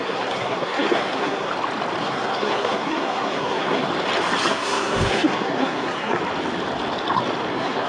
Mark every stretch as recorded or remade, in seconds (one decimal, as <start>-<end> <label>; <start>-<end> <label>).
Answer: 0.0-1.5 remade; 1.5-2.0 recorded; 2.0-3.9 remade; 3.9-4.5 recorded; 4.5-6.2 remade; 6.2-7.5 recorded; 7.5-7.9 remade